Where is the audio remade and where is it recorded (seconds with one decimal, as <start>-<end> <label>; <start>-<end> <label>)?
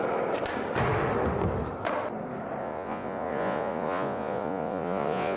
0.0-2.6 recorded; 2.6-5.4 remade